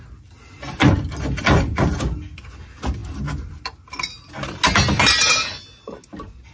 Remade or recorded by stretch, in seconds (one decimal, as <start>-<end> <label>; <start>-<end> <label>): 0.0-6.5 recorded